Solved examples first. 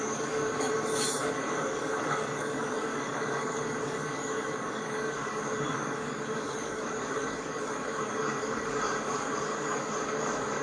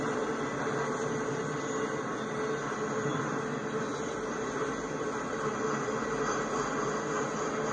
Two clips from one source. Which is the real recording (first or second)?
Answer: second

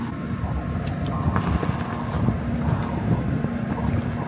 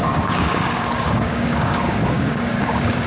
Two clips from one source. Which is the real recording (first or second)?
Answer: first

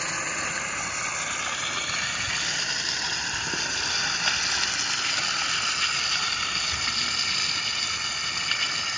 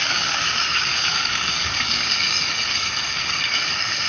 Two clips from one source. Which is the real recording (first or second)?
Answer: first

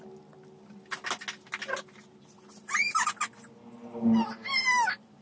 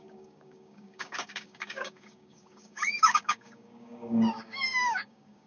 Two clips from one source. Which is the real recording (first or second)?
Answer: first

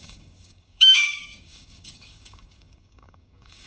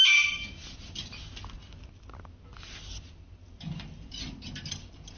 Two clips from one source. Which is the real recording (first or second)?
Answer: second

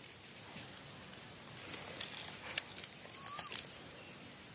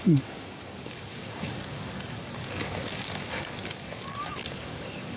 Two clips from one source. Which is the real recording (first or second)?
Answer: first